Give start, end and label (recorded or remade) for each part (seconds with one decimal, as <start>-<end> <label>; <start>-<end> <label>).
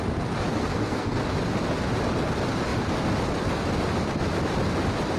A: 0.0-0.5 recorded; 0.5-1.2 remade; 1.2-5.2 recorded